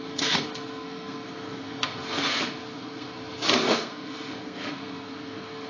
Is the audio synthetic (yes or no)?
yes